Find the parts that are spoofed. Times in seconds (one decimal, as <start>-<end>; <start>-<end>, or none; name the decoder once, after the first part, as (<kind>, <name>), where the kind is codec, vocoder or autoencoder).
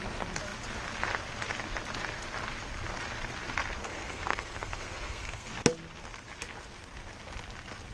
3.8-5.5 (codec, SNAC)